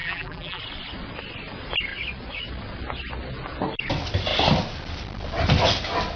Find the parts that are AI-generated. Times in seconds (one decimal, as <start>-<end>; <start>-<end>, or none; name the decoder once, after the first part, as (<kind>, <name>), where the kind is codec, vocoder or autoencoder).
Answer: 0.0-0.6 (vocoder, BigVGAN v2)